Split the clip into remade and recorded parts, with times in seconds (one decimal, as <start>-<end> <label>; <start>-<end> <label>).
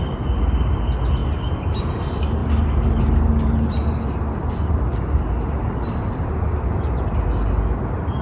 0.0-1.2 recorded; 1.2-1.8 remade; 1.8-8.2 recorded